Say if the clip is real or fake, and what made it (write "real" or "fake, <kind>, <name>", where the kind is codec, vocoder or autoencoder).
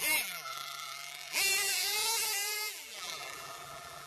fake, vocoder, BigVGAN v2